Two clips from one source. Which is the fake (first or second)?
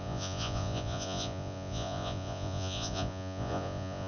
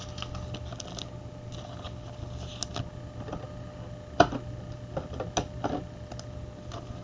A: first